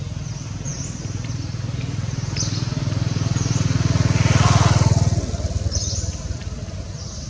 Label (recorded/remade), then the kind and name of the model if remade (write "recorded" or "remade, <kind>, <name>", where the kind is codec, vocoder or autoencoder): recorded